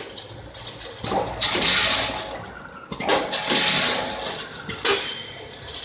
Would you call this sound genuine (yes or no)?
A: yes